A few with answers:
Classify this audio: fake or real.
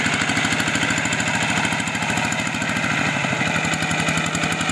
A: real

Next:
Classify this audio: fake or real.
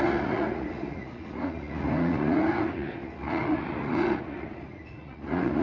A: fake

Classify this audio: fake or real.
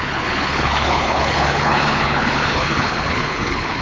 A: fake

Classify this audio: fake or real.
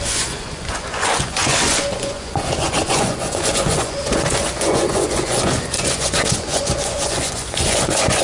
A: fake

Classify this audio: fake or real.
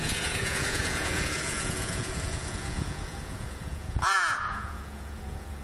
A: fake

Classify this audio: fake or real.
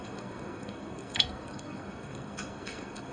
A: fake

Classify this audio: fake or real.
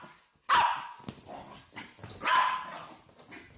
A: real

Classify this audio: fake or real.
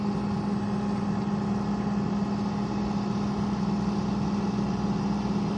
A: real